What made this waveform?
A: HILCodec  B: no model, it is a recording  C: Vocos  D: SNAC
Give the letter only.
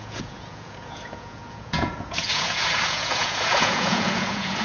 C